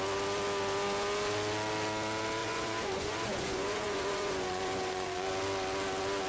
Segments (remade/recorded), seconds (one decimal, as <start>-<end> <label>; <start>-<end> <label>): 0.0-2.4 recorded; 2.4-5.3 remade; 5.3-6.3 recorded